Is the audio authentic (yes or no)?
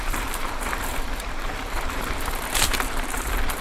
no